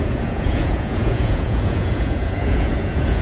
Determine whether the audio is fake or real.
fake